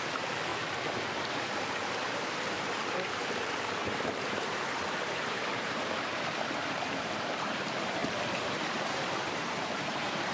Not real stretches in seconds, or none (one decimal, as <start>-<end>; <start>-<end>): 0.0-10.3